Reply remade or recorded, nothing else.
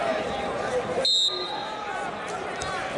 recorded